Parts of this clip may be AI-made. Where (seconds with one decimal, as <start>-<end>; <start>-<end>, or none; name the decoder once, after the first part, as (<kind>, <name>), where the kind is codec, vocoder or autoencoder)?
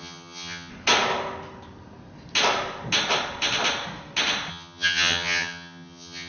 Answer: 0.0-0.7 (vocoder, HiFi-GAN); 4.5-6.3